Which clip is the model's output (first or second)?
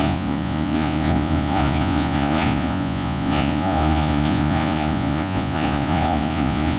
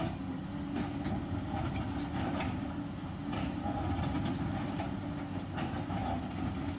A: first